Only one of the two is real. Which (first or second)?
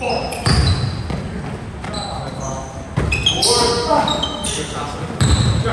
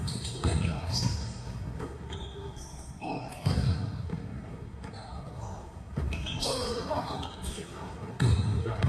first